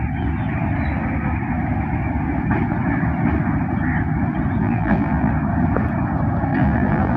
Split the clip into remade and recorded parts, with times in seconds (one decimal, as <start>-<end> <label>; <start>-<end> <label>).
0.0-4.6 recorded; 4.6-5.3 remade; 5.3-6.5 recorded; 6.5-7.2 remade